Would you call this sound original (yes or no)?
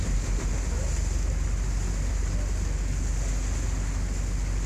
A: yes